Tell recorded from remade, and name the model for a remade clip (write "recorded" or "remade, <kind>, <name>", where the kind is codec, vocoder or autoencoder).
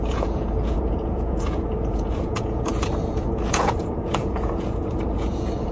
remade, vocoder, Vocos